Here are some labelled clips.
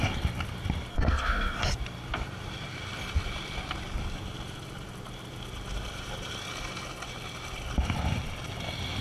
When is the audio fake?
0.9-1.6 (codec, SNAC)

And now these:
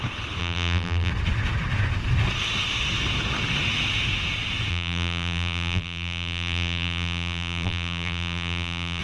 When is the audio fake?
0.4-1.1 (vocoder, BigVGAN v2); 4.7-9.0

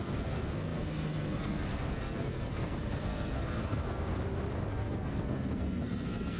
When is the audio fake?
0.0-4.1 (codec, SNAC); 4.7-6.4

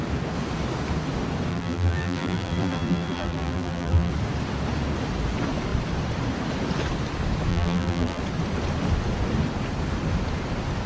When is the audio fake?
1.5-4.1 (vocoder, BigVGAN v2); 7.5-8.2